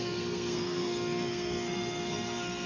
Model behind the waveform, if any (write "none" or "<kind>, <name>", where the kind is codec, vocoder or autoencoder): codec, SNAC